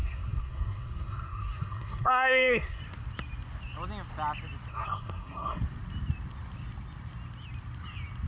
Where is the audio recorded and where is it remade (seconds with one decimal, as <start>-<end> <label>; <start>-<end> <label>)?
0.0-2.8 remade; 2.8-4.7 recorded; 4.7-5.6 remade; 5.6-8.3 recorded